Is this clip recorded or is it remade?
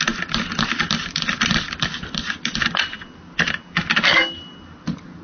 recorded